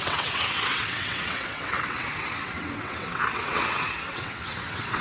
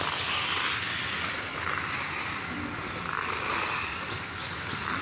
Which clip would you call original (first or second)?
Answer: second